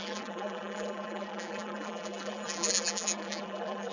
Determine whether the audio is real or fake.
fake